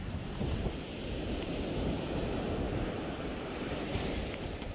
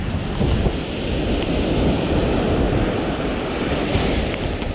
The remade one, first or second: first